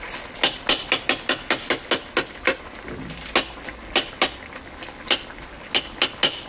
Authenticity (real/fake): real